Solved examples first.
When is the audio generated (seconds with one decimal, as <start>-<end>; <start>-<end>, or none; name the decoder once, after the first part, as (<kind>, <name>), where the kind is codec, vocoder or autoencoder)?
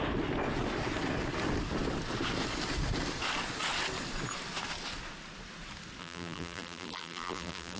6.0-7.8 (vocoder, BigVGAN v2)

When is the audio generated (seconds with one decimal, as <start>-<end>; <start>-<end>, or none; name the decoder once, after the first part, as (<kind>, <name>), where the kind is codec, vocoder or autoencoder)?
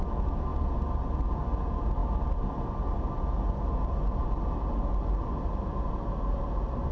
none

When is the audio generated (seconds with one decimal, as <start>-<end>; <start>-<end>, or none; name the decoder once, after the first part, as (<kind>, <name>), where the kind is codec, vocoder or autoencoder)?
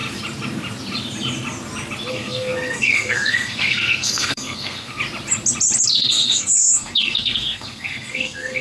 2.1-5.0 (codec, SNAC); 6.0-8.6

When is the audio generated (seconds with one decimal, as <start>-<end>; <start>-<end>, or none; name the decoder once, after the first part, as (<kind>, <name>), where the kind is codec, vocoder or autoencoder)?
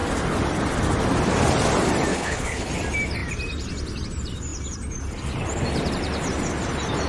2.1-2.7 (codec, HILCodec)